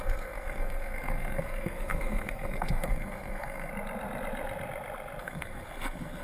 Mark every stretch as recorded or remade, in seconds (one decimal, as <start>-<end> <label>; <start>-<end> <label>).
0.0-3.7 remade; 3.7-5.2 recorded; 5.2-6.2 remade

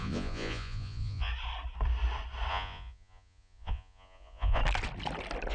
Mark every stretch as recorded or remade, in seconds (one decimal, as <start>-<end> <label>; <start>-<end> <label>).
0.0-1.3 remade; 1.3-2.5 recorded; 2.5-4.6 remade; 4.6-5.5 recorded